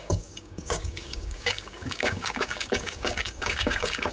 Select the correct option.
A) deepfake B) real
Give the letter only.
A